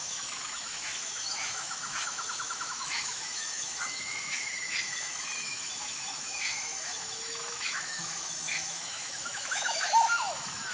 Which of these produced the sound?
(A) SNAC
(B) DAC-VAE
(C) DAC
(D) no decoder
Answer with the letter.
B